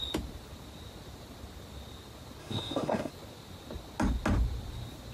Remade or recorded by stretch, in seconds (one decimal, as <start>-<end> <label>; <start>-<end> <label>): 0.0-2.4 recorded; 2.4-3.1 remade; 3.1-5.1 recorded